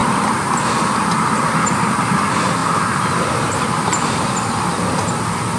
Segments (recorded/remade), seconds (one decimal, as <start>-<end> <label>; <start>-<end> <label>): 0.0-2.6 recorded; 2.6-4.1 remade; 4.1-5.6 recorded